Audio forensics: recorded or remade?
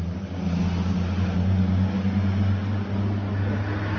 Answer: recorded